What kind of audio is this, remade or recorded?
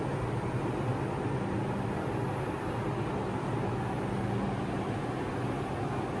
recorded